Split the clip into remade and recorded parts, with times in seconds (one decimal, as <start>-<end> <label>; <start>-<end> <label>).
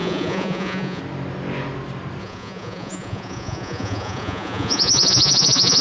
0.0-1.0 remade; 1.0-2.2 recorded; 2.2-5.8 remade